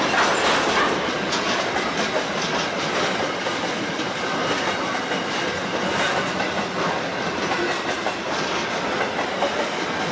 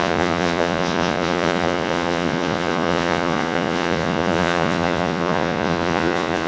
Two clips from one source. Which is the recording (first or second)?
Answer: first